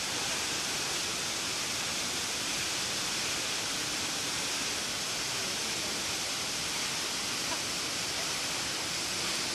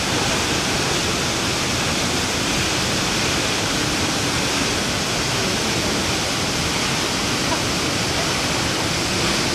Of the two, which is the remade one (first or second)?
first